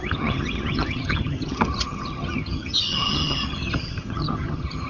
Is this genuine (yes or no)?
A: no